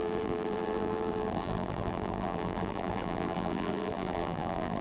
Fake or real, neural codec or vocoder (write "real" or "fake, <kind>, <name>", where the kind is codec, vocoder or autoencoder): fake, vocoder, BigVGAN v2